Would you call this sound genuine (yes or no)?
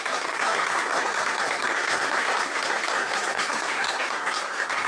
no